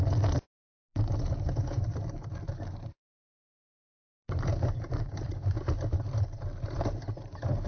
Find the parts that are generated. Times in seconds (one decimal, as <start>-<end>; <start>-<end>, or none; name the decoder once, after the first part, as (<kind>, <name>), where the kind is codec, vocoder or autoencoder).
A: 0.9-3.0 (vocoder, BigVGAN v2); 3.4-6.4